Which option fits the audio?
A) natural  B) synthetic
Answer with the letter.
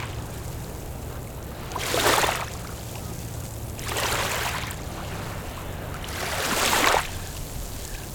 B